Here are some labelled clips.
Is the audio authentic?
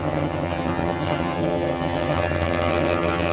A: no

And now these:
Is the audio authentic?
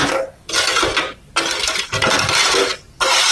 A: yes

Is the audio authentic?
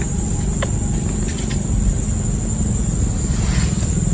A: yes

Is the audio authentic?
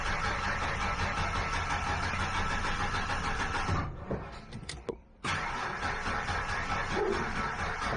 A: yes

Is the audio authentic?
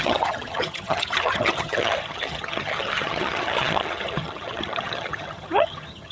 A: no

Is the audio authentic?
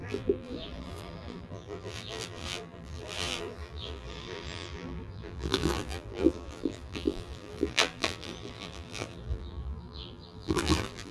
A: no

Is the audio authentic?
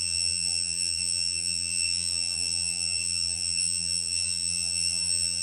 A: no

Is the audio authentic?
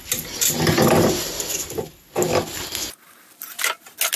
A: yes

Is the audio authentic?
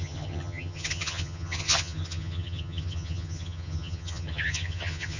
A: no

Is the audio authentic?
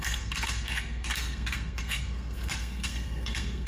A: no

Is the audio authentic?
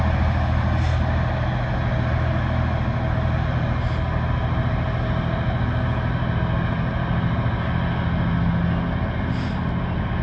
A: yes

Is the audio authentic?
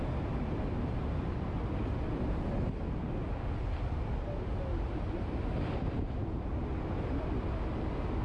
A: yes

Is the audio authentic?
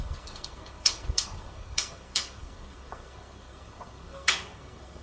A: no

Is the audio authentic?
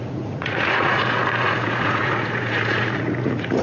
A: no